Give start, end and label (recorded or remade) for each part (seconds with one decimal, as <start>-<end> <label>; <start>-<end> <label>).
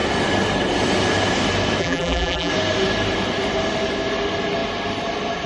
0.0-1.8 recorded; 1.8-2.5 remade; 2.5-5.5 recorded